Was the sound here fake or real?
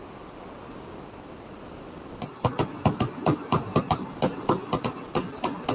real